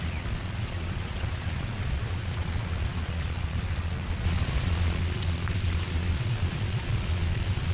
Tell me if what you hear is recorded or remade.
remade